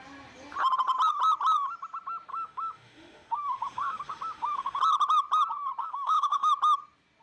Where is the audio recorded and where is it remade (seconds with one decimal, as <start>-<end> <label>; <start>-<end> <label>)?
0.0-2.3 recorded; 2.3-4.8 remade; 4.8-5.8 recorded; 5.8-6.5 remade; 6.5-7.2 recorded

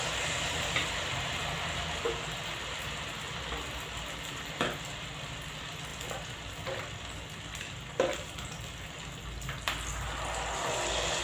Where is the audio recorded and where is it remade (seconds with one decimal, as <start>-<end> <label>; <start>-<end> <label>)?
0.0-11.2 recorded

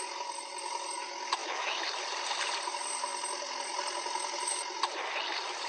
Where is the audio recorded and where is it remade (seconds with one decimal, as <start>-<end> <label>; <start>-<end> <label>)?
0.0-1.4 recorded; 1.4-1.9 remade; 1.9-5.7 recorded

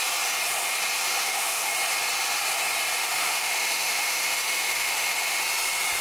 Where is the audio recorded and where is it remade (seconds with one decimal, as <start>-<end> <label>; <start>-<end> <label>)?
0.0-1.2 recorded; 1.2-1.7 remade; 1.7-3.0 recorded; 3.0-5.4 remade; 5.4-6.0 recorded

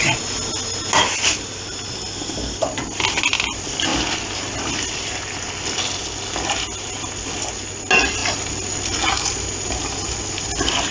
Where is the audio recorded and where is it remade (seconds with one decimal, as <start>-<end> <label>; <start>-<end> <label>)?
0.0-10.9 recorded

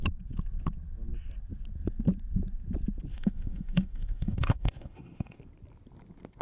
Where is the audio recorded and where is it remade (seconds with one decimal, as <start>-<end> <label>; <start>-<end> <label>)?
0.0-3.1 recorded; 3.1-5.4 remade; 5.4-6.4 recorded

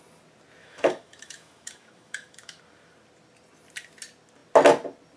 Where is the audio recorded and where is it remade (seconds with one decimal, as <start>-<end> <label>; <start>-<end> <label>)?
0.0-0.6 recorded; 0.6-2.6 remade; 2.6-5.2 recorded